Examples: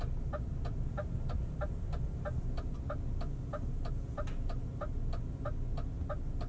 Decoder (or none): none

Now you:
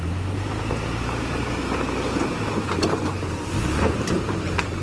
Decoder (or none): vocoder, BigVGAN v2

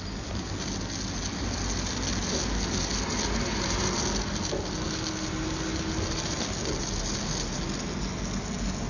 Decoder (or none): none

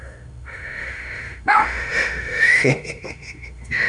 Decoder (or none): autoencoder, DAC-VAE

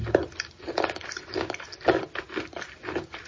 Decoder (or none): none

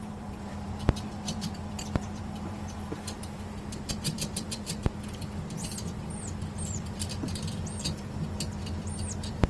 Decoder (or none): vocoder, BigVGAN v2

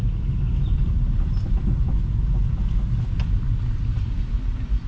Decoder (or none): none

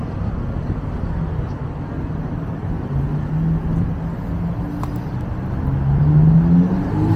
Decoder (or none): none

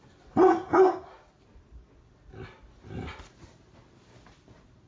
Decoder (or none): none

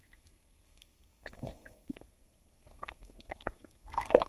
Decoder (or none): codec, SNAC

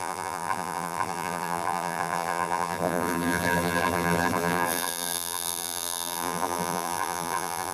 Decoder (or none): vocoder, BigVGAN v2